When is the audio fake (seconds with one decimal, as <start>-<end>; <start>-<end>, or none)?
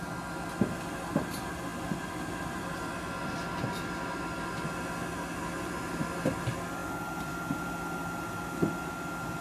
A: none